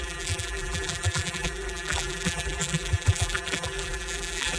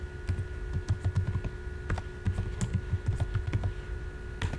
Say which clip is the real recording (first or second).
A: second